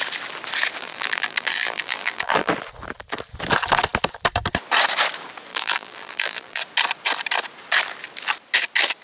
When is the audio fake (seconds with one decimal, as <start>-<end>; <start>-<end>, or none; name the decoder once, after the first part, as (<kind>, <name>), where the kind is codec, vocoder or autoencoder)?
0.8-2.5 (vocoder, BigVGAN v2); 5.5-6.6